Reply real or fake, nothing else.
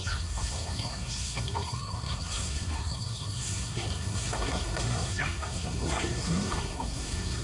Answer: fake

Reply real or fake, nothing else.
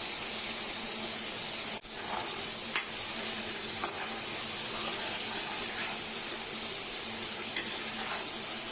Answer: real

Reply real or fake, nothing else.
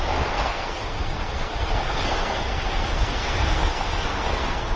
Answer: fake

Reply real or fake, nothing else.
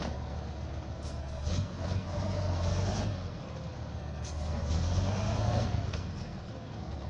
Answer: fake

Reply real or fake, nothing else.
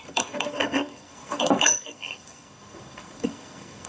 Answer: fake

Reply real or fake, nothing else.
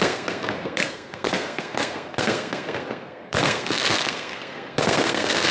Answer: fake